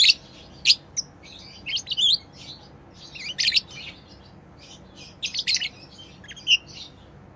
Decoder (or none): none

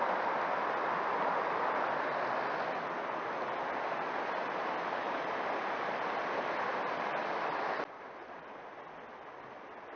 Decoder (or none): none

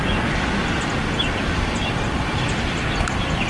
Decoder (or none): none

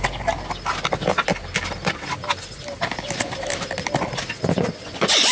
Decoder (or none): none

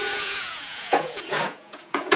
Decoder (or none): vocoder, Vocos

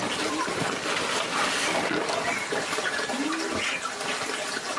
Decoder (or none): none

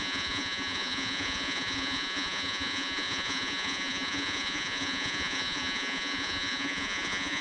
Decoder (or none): vocoder, Vocos